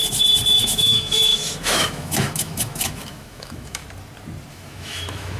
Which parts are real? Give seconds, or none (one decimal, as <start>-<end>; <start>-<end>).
0.0-0.6; 3.8-4.5

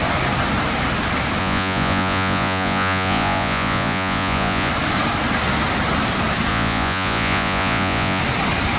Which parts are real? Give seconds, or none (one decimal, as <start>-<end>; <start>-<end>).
0.0-1.4; 4.7-6.5; 8.2-8.8

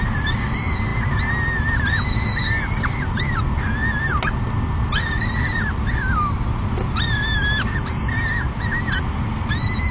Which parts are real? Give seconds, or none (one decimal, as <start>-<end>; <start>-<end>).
0.0-9.9

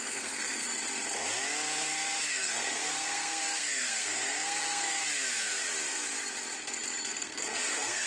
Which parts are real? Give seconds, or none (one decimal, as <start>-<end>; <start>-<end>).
0.7-2.3; 5.0-7.1

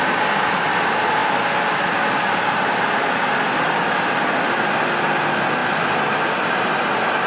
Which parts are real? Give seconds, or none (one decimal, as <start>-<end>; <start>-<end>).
0.0-7.3

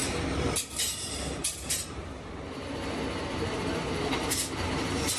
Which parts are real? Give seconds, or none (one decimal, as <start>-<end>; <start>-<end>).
none

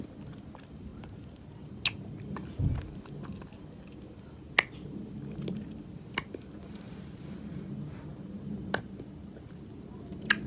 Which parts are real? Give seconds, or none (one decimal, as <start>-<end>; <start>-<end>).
0.0-10.5

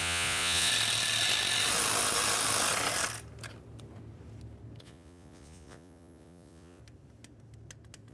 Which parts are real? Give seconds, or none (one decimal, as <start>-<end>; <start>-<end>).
0.7-4.8; 6.8-8.1